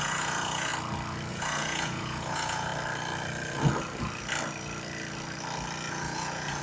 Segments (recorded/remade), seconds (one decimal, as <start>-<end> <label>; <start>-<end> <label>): 0.0-0.7 remade; 0.7-1.3 recorded; 1.3-2.7 remade; 2.7-5.9 recorded; 5.9-6.6 remade